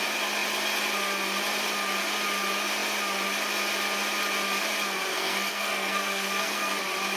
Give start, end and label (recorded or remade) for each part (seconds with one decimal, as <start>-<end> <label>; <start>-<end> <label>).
0.0-5.1 recorded; 5.1-6.8 remade; 6.8-7.2 recorded